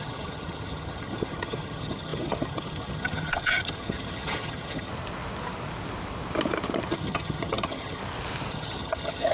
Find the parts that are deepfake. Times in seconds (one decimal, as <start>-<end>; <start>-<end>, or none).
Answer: 0.0-4.9; 6.9-8.0; 8.5-9.3